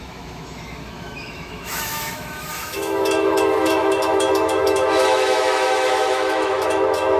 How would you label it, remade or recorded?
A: remade